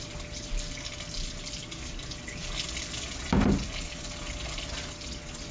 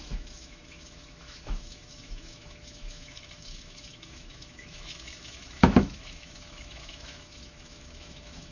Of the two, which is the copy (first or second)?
second